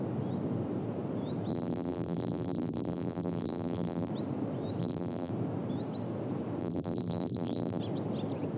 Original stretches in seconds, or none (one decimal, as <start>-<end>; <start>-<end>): 0.0-1.5; 4.1-4.8; 5.3-6.6; 7.8-8.6